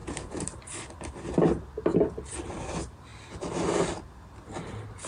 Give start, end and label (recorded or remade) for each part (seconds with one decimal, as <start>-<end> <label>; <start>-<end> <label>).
0.0-0.6 remade; 0.6-5.1 recorded